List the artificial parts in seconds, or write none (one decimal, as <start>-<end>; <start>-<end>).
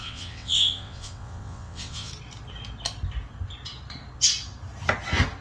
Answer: 0.0-2.1